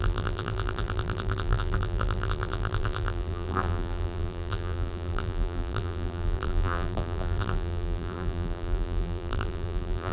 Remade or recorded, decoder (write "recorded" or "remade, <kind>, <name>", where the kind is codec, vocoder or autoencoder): remade, vocoder, BigVGAN v2